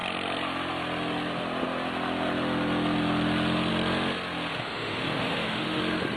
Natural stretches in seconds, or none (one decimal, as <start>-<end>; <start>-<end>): 0.0-4.5; 5.8-6.2